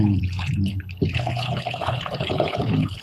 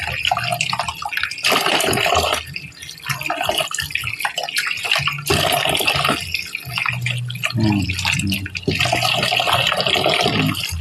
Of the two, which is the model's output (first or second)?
first